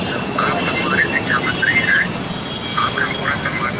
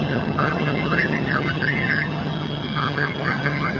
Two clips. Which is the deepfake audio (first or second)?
second